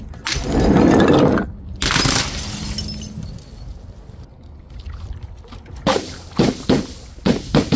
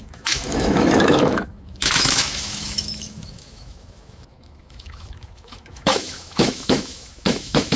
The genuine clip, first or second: first